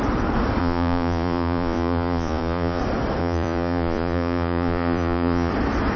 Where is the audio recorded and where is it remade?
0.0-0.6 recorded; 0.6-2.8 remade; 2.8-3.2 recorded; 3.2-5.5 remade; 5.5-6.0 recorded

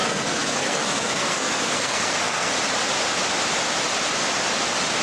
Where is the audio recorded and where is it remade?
0.0-2.5 remade; 2.5-5.0 recorded

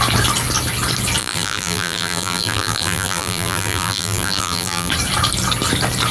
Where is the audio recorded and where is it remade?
0.0-1.2 recorded; 1.2-4.9 remade; 4.9-6.1 recorded

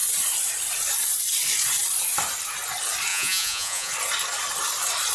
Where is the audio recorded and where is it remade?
0.0-3.1 recorded; 3.1-3.9 remade; 3.9-5.1 recorded